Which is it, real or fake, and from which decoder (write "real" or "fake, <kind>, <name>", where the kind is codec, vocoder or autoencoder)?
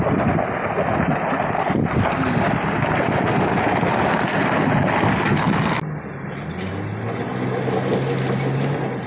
real